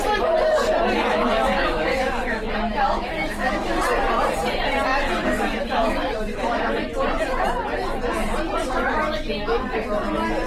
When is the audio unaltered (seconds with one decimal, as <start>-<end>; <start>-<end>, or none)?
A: 0.0-1.1; 3.8-4.9; 6.7-10.5